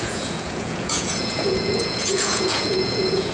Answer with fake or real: fake